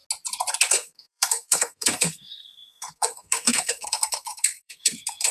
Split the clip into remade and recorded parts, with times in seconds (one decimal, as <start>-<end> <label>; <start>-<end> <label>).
0.0-0.7 recorded; 0.7-5.3 remade

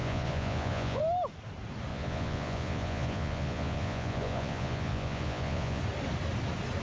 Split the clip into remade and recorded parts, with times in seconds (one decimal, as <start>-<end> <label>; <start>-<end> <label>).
0.0-1.0 remade; 1.0-1.9 recorded; 1.9-5.8 remade; 5.8-6.8 recorded

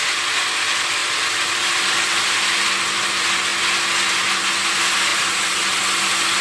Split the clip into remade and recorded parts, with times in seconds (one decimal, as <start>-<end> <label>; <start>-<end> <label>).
0.0-1.0 recorded; 1.0-2.7 remade; 2.7-5.1 recorded; 5.1-5.8 remade; 5.8-6.4 recorded

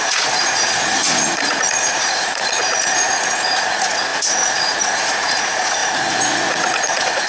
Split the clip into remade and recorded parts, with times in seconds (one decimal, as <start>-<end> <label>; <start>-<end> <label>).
0.0-7.3 remade

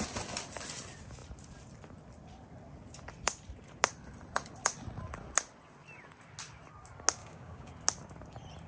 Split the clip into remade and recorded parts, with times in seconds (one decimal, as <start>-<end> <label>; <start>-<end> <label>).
0.0-7.2 recorded; 7.2-7.7 remade; 7.7-8.7 recorded

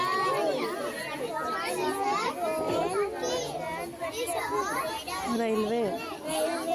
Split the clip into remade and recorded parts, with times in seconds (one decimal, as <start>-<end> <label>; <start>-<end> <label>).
0.0-6.7 recorded

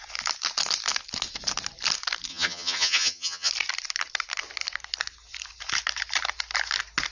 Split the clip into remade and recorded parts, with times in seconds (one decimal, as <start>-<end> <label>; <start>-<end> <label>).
0.0-2.3 recorded; 2.3-3.5 remade; 3.5-7.1 recorded

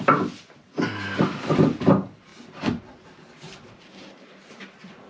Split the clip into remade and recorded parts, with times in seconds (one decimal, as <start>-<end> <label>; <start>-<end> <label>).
0.0-5.1 recorded